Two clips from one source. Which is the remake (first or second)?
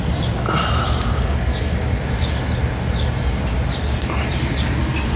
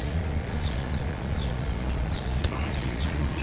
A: second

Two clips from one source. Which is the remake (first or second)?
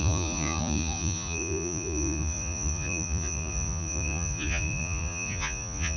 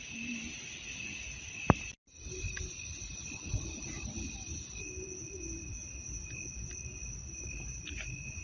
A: first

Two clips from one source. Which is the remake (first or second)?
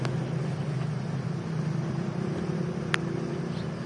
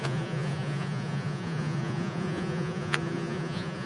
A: second